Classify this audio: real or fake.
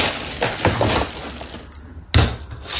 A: real